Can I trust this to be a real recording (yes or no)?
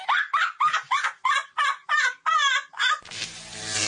yes